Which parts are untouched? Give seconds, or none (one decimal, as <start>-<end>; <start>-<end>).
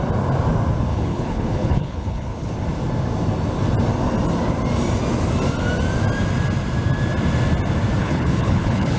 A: 0.0-0.9; 2.5-8.0